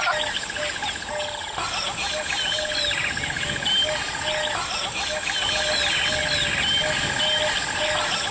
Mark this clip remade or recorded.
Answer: recorded